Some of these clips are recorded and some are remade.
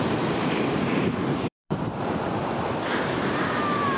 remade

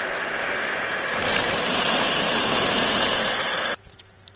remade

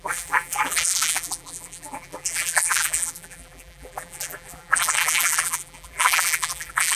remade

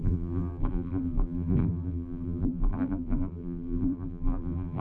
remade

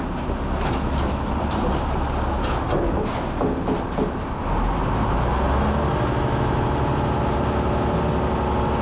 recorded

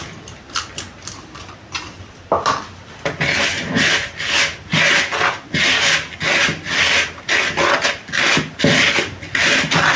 recorded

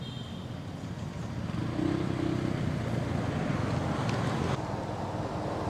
recorded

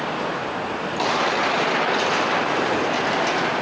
recorded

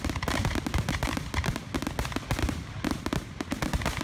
recorded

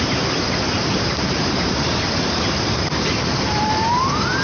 remade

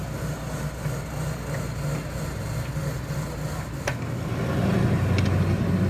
recorded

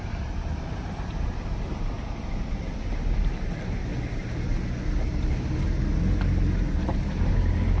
recorded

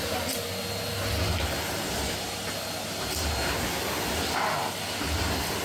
recorded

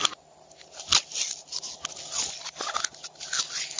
recorded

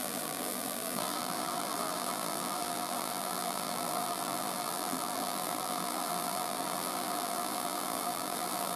remade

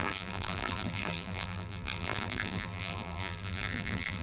remade